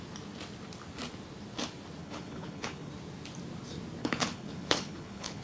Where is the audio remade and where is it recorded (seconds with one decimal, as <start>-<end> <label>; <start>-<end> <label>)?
0.0-2.0 recorded; 2.0-2.9 remade; 2.9-4.0 recorded; 4.0-5.4 remade